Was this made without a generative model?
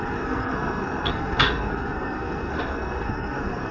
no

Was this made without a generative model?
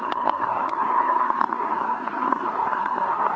no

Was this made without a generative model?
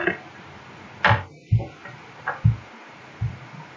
yes